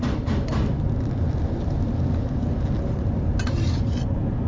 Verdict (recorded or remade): recorded